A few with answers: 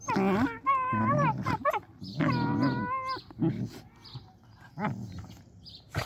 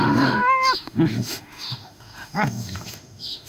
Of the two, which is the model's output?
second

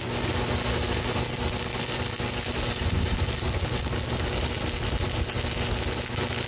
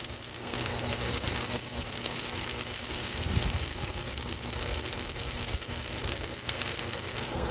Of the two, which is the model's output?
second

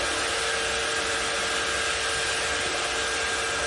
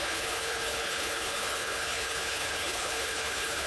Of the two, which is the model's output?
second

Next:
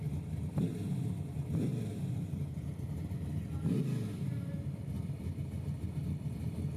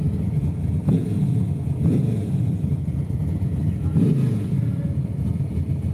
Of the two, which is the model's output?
second